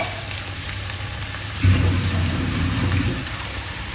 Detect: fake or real fake